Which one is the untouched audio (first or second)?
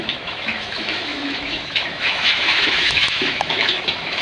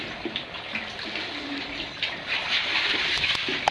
second